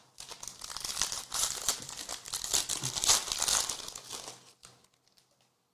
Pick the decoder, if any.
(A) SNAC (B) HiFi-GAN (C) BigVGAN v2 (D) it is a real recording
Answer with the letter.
D